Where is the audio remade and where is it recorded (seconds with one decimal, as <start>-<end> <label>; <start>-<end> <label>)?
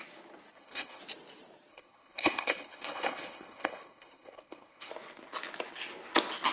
0.0-0.5 recorded; 0.5-1.0 remade; 1.0-1.7 recorded; 1.7-4.9 remade; 4.9-6.5 recorded